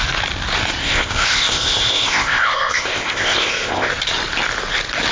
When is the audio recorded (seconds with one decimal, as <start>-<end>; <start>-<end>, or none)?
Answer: 0.0-0.8; 3.9-5.1